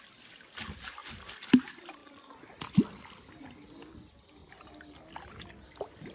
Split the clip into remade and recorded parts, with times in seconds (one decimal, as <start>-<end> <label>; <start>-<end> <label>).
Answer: 0.0-4.4 recorded; 4.4-5.3 remade; 5.3-6.1 recorded